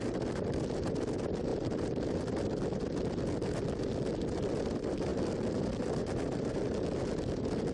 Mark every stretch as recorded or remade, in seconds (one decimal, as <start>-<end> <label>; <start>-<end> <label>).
0.0-5.1 recorded; 5.1-6.6 remade; 6.6-7.7 recorded